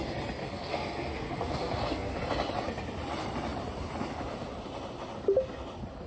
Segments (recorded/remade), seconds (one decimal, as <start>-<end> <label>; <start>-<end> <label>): 0.0-0.4 recorded; 0.4-2.2 remade; 2.2-6.1 recorded